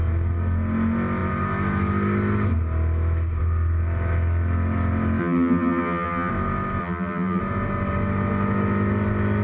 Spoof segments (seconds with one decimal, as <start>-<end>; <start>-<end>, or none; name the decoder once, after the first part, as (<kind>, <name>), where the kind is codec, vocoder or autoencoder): 5.2-6.3 (vocoder, BigVGAN v2); 6.8-7.4